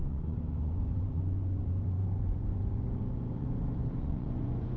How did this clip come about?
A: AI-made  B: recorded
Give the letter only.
A